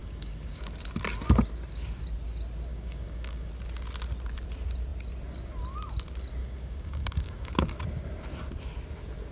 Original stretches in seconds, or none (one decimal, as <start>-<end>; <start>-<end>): 0.6-2.7; 3.5-6.4; 7.5-9.3